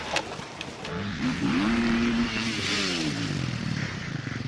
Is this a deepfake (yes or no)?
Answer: yes